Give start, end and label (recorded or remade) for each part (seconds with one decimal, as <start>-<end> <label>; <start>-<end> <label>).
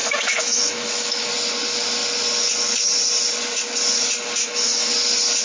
0.0-1.3 remade; 1.3-4.4 recorded; 4.4-4.9 remade; 4.9-5.4 recorded